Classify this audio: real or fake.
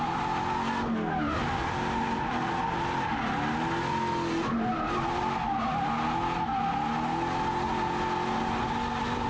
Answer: real